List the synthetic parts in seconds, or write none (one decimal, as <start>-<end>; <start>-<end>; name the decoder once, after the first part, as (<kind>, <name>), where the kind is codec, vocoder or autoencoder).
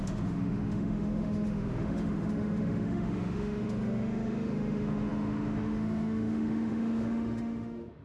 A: 0.0-8.0 (autoencoder, DAC-VAE)